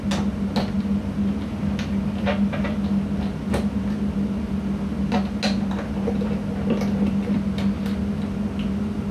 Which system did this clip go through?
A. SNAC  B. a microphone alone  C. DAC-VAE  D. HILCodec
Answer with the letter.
B